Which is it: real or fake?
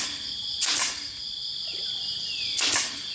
real